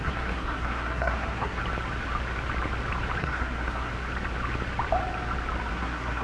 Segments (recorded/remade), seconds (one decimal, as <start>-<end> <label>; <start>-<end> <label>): 0.0-1.6 remade; 1.6-3.2 recorded; 3.2-3.9 remade; 3.9-5.7 recorded; 5.7-6.2 remade